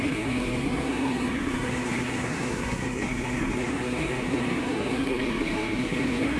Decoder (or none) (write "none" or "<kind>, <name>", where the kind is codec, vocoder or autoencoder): codec, SNAC